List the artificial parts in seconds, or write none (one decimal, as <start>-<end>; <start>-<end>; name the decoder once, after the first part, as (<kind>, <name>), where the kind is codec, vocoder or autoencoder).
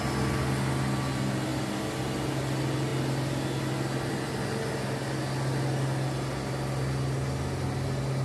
none